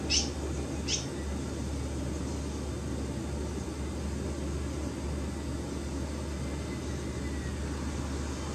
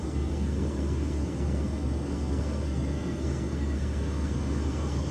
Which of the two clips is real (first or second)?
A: first